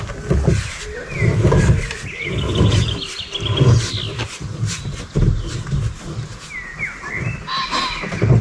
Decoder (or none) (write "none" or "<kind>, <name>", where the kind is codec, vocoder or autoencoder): none